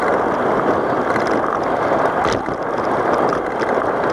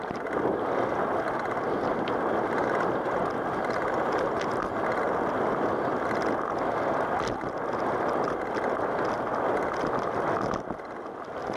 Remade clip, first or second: first